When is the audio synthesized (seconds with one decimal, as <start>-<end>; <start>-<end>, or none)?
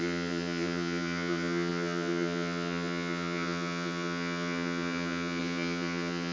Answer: 0.0-6.3